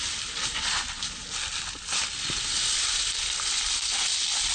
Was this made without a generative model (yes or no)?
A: yes